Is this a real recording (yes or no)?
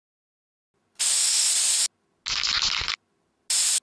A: yes